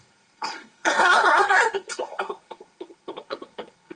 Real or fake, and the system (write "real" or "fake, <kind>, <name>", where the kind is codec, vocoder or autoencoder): fake, codec, SNAC